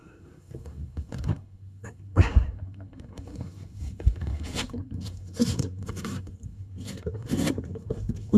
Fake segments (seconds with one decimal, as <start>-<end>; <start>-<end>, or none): 0.0-8.4